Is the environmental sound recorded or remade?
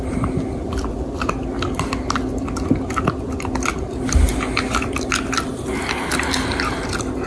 recorded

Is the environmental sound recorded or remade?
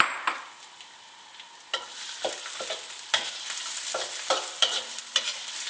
recorded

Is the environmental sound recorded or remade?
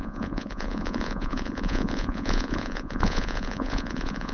remade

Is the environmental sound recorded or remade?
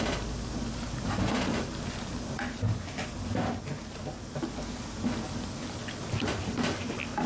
recorded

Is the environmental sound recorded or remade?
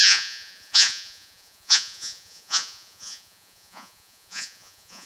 remade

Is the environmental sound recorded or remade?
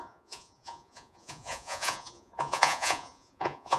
remade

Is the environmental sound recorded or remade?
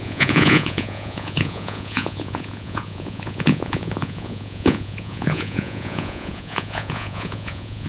remade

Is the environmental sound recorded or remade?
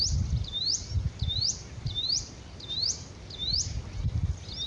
recorded